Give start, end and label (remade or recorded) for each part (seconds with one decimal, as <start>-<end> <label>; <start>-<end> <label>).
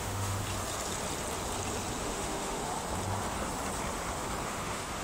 0.0-0.4 remade; 0.4-2.0 recorded; 2.0-2.7 remade; 2.7-4.4 recorded; 4.4-5.0 remade